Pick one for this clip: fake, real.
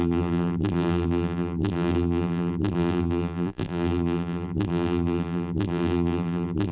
fake